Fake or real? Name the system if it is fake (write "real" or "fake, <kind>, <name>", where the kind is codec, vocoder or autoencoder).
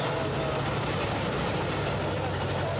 real